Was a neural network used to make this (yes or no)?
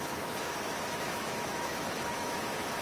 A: yes